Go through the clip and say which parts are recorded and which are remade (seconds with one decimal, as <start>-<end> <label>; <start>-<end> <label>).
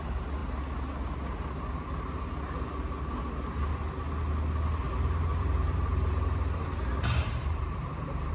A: 0.0-5.3 recorded; 5.3-8.3 remade